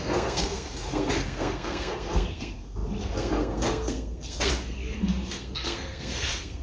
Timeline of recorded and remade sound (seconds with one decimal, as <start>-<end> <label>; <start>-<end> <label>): 0.0-6.6 remade